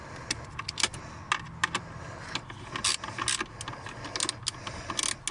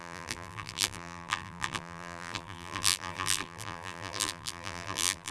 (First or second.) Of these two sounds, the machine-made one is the second